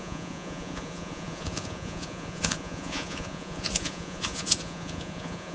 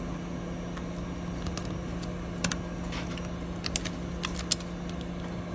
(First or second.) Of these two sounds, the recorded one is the second